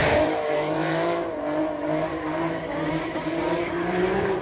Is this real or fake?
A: fake